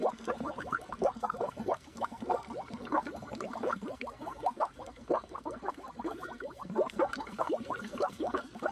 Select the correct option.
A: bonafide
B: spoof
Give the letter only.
B